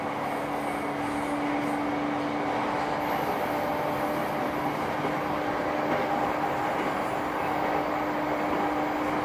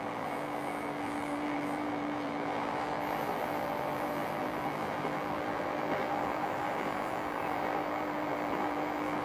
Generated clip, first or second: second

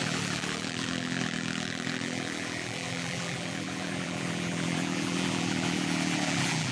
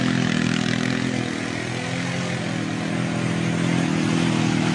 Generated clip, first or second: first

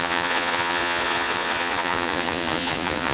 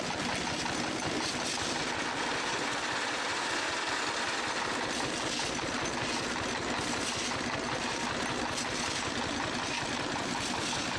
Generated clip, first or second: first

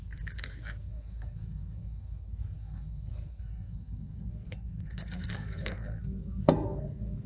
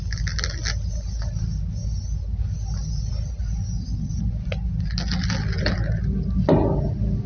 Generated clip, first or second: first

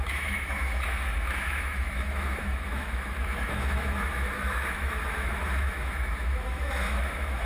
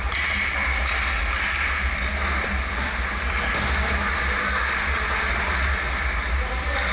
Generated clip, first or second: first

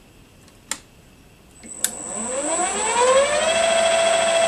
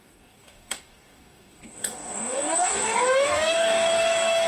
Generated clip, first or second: second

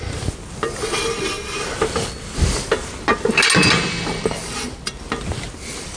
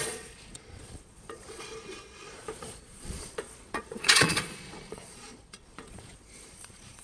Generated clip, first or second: second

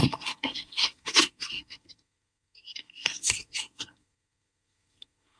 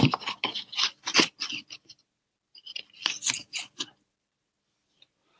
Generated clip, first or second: first